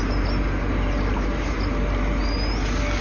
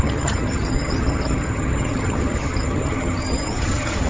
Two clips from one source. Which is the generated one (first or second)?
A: second